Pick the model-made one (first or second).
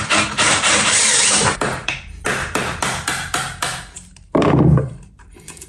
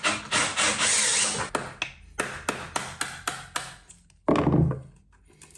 first